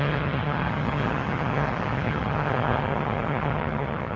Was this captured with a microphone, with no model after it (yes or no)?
no